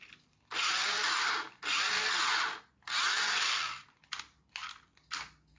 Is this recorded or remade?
recorded